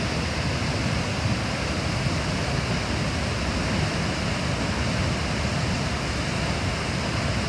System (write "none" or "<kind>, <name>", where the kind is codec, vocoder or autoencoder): none